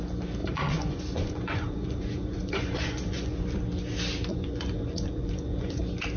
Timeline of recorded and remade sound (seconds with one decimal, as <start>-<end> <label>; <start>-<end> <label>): 0.0-0.4 recorded; 0.4-3.4 remade; 3.4-4.3 recorded; 4.3-5.8 remade; 5.8-6.2 recorded